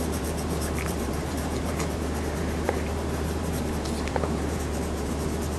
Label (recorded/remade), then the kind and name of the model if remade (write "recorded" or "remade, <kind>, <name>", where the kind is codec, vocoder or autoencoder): remade, vocoder, BigVGAN v2